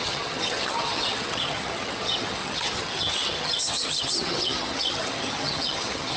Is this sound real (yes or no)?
no